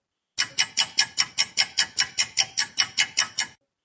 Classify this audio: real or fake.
real